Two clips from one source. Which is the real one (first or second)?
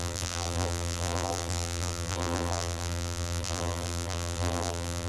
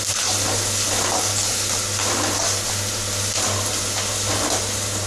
second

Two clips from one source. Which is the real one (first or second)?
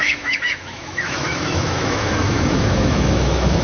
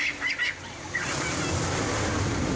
second